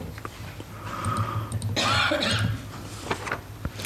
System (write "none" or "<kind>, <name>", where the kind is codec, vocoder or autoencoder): none